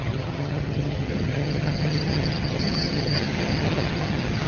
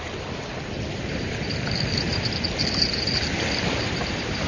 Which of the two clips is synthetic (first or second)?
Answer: first